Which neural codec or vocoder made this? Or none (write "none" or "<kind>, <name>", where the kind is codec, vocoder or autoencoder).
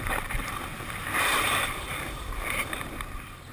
vocoder, BigVGAN v2